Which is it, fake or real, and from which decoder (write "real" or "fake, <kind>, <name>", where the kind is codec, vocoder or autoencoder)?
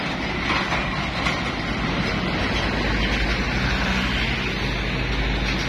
real